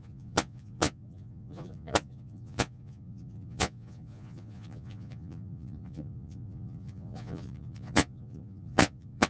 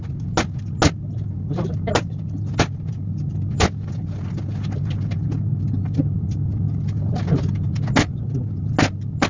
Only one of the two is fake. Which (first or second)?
first